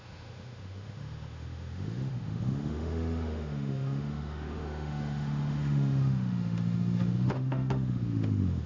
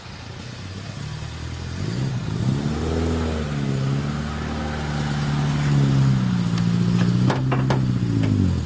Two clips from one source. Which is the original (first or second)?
second